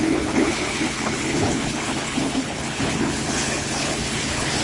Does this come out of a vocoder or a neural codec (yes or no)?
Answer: yes